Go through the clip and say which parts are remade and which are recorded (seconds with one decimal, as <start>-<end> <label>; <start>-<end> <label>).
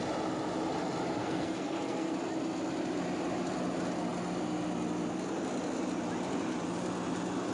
0.0-1.2 recorded; 1.2-2.2 remade; 2.2-7.5 recorded